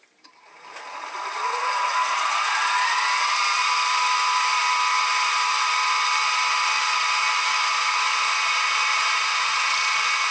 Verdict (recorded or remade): remade